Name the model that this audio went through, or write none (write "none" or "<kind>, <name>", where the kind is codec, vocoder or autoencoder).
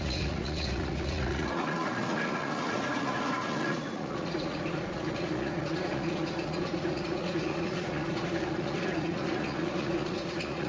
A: vocoder, Vocos